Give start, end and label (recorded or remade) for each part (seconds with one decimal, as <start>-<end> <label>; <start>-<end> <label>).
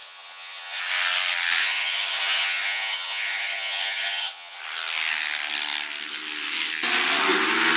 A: 0.0-0.8 remade; 0.8-1.6 recorded; 1.6-4.6 remade; 4.6-7.8 recorded